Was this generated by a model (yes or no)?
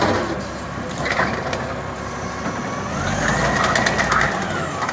no